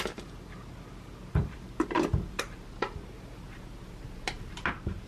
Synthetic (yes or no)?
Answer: no